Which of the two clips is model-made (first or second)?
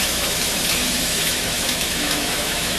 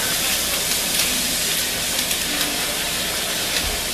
first